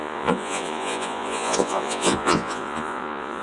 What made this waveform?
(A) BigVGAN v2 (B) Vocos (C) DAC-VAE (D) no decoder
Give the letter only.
B